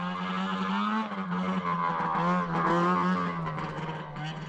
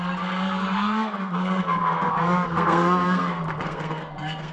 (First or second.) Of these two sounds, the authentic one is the first